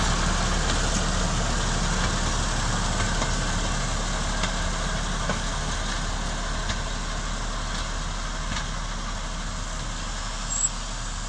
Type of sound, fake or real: real